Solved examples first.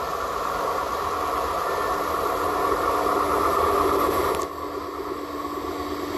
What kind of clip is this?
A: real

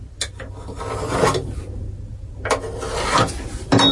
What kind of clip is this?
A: real